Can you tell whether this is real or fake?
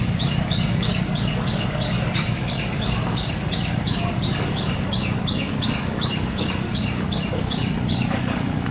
fake